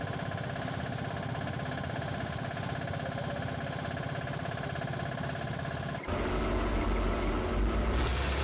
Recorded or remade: recorded